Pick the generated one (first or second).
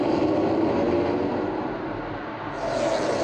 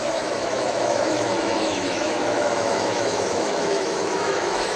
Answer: second